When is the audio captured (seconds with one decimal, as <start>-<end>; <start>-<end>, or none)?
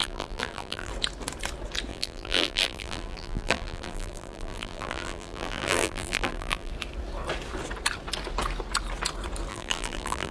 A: 0.9-1.9; 6.7-9.5